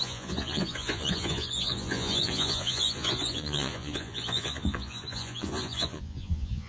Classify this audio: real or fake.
fake